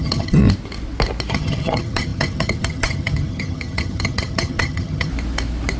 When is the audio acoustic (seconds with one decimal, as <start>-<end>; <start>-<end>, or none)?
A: 0.4-1.3; 5.1-5.8